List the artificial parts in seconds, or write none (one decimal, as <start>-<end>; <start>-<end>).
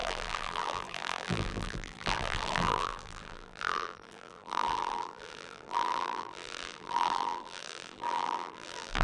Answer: 0.0-9.0